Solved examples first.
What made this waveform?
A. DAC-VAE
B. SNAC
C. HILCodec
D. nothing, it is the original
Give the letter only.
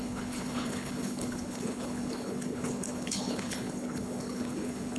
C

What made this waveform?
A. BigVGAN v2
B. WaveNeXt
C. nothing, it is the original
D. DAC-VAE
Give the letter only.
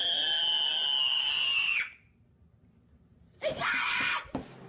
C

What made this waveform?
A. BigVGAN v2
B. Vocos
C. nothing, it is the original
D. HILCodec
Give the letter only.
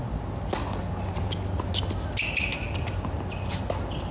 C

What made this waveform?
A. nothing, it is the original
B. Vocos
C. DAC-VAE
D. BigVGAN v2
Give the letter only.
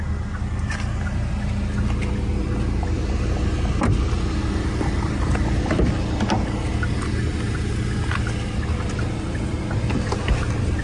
A